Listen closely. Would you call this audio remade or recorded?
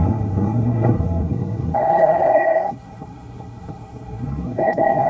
remade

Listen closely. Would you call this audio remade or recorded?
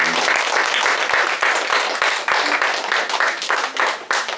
recorded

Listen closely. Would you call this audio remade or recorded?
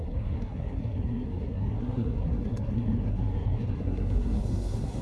remade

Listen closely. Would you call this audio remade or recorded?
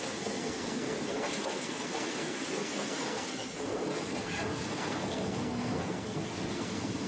remade